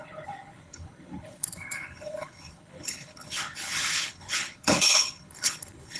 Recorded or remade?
remade